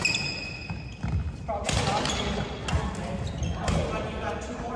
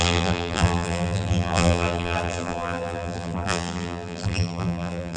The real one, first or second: first